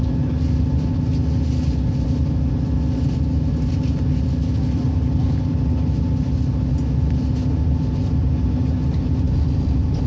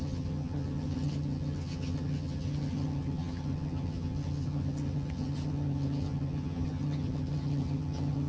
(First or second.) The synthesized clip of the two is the second